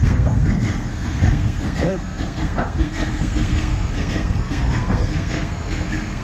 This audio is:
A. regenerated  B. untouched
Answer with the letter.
A